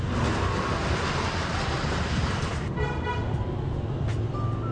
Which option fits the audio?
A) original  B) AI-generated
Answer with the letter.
A